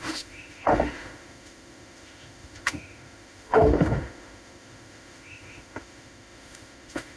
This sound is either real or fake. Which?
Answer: fake